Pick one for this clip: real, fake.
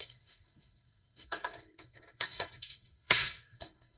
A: fake